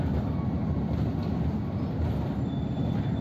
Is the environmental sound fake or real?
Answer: real